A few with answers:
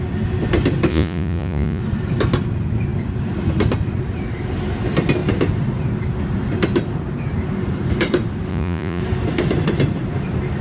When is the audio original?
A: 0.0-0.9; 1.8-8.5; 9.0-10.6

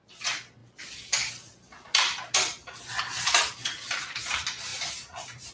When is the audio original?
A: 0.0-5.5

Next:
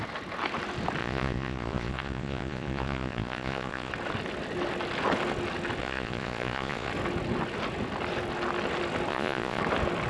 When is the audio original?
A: 0.0-1.0; 3.9-5.8; 6.9-9.1; 9.6-10.1

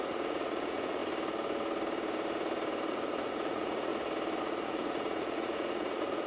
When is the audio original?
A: 1.0-2.9; 3.9-4.4

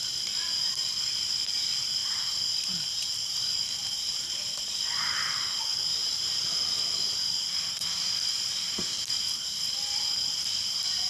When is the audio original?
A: 0.0-11.1